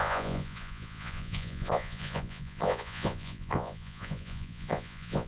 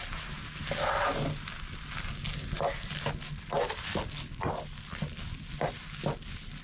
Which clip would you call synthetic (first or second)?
first